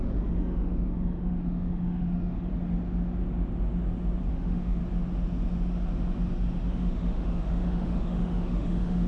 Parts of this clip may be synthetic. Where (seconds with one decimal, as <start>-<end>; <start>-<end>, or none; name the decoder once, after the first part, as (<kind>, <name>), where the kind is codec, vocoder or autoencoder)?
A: 0.0-2.5 (autoencoder, DAC-VAE); 4.3-4.8; 6.7-9.1